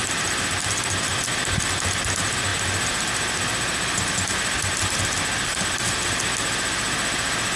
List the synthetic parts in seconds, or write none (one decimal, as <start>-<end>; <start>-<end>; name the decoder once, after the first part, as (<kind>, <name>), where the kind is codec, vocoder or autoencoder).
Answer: none